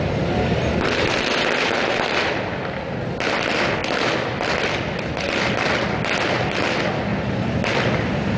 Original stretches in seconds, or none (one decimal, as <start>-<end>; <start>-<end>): 0.0-8.4